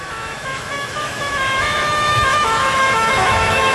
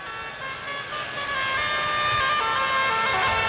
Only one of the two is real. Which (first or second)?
second